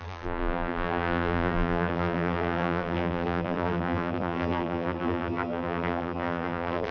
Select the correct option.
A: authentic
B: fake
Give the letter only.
B